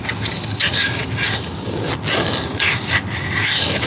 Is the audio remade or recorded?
recorded